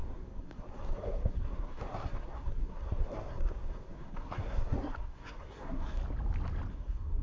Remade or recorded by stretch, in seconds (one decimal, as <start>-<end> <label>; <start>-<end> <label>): 0.0-6.0 remade; 6.0-6.7 recorded; 6.7-7.2 remade